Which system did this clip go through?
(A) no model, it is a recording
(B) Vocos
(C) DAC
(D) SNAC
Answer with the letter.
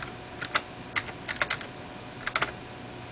A